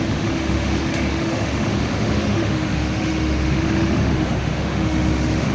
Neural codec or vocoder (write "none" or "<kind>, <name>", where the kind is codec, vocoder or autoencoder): autoencoder, DAC-VAE